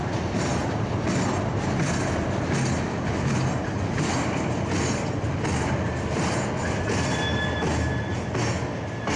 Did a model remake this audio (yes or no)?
no